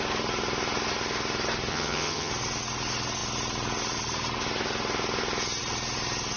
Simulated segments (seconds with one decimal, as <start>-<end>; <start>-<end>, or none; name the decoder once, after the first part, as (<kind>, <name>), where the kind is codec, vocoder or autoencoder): 1.7-2.3 (vocoder, HiFi-GAN)